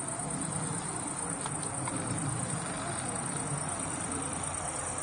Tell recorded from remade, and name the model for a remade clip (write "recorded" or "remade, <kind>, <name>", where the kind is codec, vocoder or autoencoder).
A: recorded